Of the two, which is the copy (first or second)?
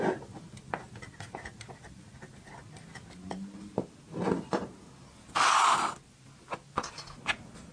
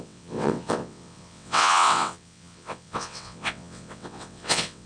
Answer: second